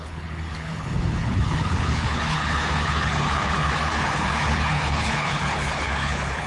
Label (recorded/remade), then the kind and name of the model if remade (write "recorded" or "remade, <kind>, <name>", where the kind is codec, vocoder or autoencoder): remade, codec, HILCodec